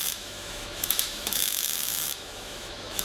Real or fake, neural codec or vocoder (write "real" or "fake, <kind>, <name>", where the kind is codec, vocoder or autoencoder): fake, autoencoder, DAC-VAE